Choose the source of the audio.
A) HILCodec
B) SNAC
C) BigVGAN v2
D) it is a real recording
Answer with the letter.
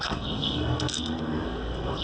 B